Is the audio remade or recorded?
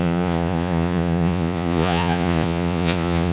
remade